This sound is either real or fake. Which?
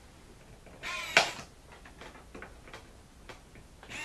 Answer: real